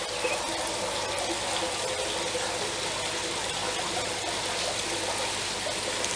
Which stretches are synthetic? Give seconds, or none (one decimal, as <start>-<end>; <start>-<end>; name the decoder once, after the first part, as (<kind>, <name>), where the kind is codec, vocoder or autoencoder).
none